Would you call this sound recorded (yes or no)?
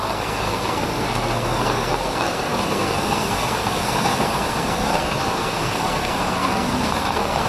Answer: no